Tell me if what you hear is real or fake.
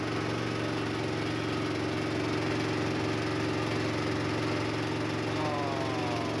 real